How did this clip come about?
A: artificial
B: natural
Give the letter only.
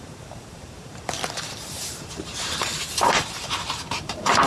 A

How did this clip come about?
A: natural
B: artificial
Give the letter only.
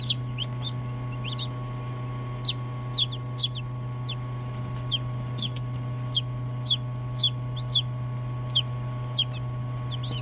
A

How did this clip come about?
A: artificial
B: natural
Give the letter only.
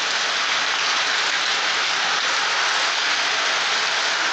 B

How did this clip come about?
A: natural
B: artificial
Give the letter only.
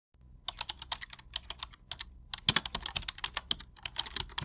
A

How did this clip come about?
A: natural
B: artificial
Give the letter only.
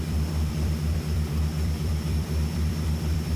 B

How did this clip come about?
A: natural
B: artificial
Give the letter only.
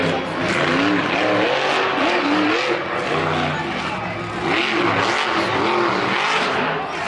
A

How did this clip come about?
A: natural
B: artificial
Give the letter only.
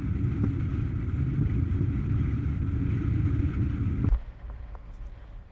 A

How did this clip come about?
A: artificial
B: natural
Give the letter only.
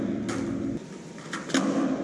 B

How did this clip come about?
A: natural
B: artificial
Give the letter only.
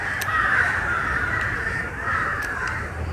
B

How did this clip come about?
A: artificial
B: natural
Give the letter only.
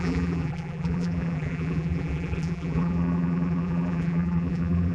A